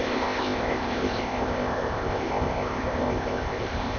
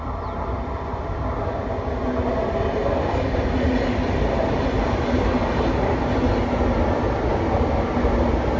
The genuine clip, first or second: second